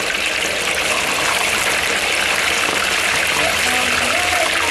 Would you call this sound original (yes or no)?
yes